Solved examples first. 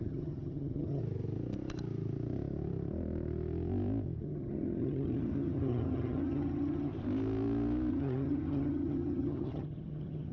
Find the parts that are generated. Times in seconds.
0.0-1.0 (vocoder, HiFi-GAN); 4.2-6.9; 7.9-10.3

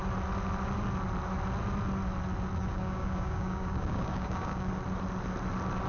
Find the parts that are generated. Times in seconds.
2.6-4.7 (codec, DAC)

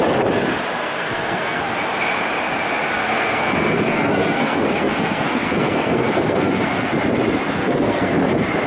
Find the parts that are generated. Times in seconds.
0.8-1.6 (codec, SNAC); 3.0-6.9; 7.6-8.2

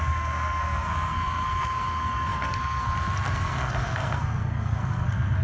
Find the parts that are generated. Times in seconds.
0.0-5.4 (codec, SNAC)